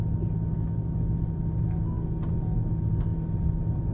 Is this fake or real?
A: real